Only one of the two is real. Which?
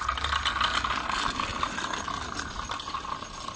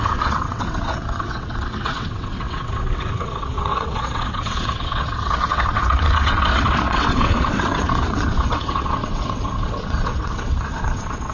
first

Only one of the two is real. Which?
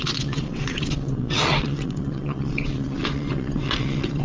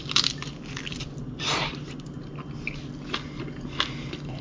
second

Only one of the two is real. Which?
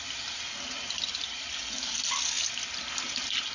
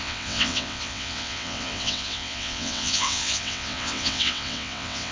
first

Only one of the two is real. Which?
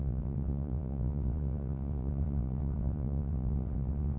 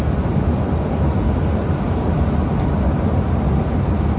second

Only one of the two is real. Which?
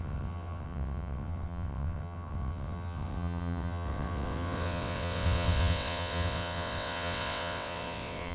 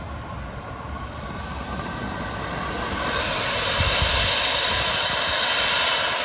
second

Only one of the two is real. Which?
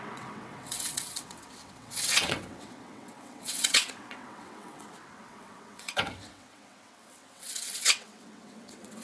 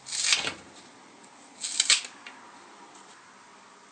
second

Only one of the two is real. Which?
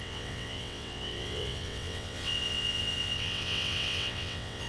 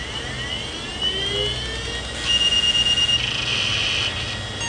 second